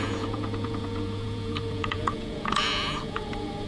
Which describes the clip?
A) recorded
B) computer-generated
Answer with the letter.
B